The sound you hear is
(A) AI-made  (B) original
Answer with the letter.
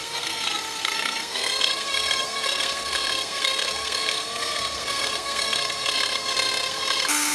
A